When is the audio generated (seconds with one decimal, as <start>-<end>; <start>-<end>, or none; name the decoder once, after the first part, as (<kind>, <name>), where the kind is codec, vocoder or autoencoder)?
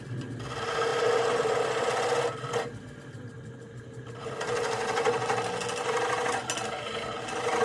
none